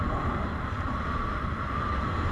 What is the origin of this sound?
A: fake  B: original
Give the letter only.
B